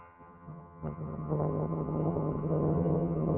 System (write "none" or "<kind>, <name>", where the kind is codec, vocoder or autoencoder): vocoder, HiFi-GAN